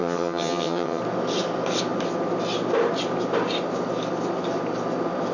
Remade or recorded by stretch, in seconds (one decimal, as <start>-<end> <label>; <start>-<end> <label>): 0.0-1.0 remade; 1.0-5.3 recorded